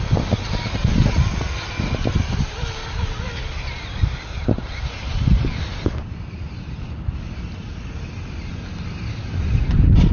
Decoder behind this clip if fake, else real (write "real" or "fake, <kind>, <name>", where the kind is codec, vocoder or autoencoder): real